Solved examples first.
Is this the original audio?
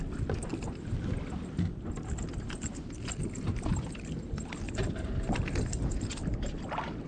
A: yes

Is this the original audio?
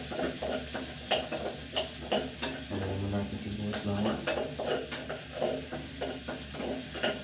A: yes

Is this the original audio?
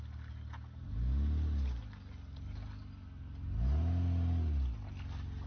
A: yes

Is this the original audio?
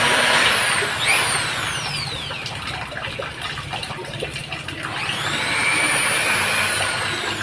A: no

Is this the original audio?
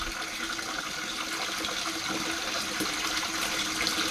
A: yes